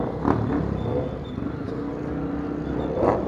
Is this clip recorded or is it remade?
recorded